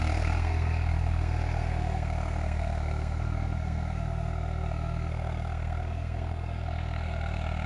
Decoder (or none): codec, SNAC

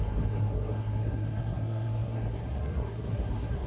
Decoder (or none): codec, SNAC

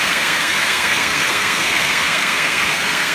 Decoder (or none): codec, SNAC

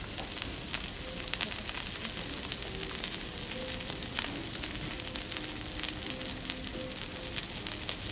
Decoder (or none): none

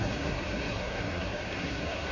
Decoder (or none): codec, SNAC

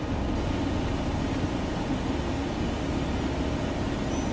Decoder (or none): none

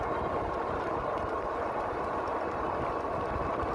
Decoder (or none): none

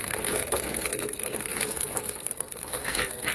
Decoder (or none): codec, SNAC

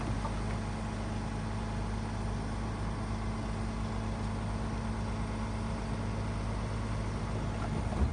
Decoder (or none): none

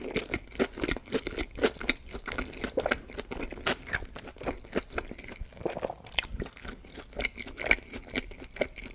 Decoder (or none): none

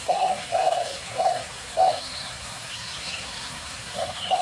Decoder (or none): codec, SNAC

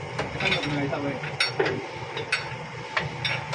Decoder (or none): none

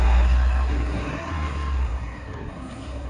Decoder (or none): codec, SNAC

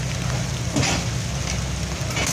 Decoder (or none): none